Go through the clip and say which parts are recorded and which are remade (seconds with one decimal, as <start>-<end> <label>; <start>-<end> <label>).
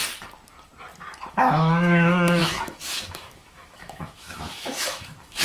0.0-1.3 recorded; 1.3-5.4 remade